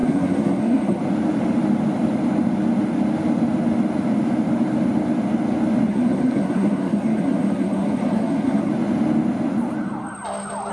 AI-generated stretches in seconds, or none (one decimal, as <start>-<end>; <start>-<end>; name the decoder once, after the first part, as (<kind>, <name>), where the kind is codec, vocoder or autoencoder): 0.0-1.0 (codec, SNAC); 5.9-8.7